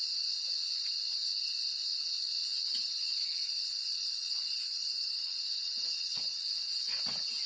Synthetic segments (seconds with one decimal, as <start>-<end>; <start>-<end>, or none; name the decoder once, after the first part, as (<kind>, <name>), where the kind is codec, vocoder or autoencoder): 2.4-6.8 (vocoder, Vocos)